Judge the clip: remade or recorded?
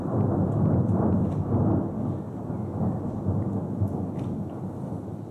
recorded